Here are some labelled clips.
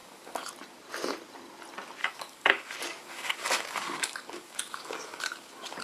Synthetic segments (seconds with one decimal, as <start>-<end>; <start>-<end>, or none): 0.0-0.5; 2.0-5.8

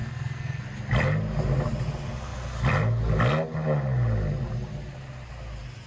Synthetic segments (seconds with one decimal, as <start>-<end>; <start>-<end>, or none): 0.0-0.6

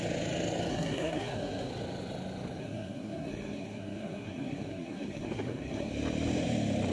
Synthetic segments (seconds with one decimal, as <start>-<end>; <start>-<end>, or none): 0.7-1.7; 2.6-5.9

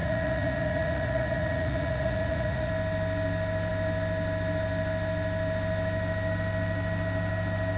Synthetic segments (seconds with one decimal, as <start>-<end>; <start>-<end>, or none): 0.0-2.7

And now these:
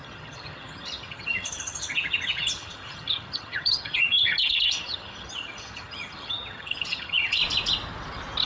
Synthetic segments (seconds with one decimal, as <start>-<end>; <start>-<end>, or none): 0.0-7.4

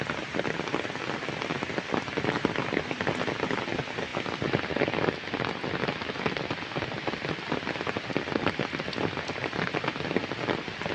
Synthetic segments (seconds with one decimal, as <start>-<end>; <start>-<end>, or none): none

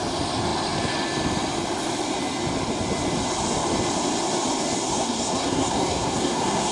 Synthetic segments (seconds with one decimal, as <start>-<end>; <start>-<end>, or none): 4.9-6.7

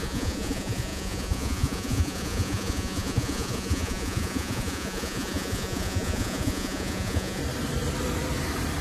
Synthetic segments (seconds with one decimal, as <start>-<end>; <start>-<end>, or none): 0.0-7.4